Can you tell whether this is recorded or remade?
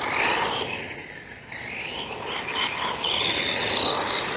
recorded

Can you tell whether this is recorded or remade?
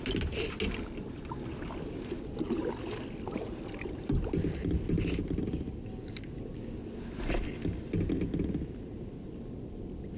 recorded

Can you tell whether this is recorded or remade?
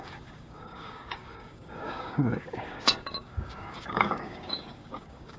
remade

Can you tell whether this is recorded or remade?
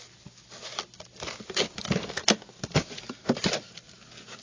recorded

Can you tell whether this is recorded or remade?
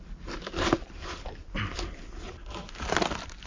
recorded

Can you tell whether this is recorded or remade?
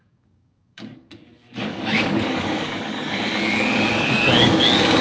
remade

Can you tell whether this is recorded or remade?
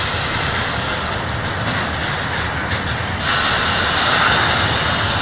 recorded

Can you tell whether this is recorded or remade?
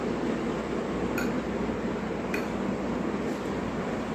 recorded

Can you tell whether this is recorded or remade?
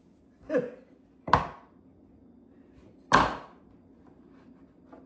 recorded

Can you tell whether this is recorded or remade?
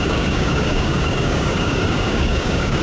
remade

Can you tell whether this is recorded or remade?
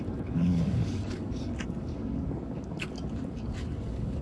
remade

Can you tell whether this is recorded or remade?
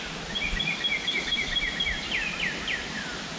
recorded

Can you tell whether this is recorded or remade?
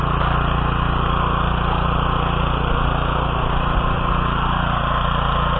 recorded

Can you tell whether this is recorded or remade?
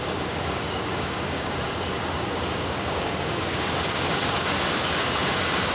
remade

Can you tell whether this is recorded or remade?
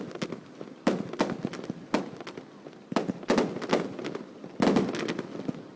recorded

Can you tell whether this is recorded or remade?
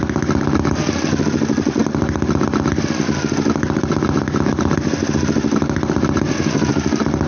recorded